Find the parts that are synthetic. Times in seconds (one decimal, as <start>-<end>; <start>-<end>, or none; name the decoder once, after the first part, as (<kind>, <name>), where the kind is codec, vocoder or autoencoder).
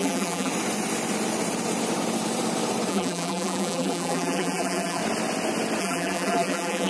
0.0-0.5 (vocoder, BigVGAN v2); 2.9-5.0; 5.8-6.9